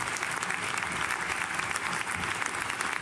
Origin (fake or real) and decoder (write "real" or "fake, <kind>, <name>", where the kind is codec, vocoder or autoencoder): real